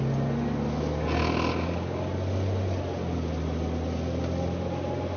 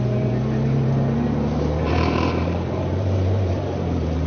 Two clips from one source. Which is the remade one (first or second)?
second